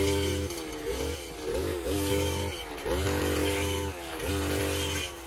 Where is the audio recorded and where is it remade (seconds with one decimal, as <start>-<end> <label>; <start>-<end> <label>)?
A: 0.0-1.5 recorded; 1.5-2.4 remade; 2.4-3.4 recorded; 3.4-4.3 remade; 4.3-5.3 recorded